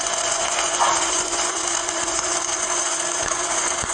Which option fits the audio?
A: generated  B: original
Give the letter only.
A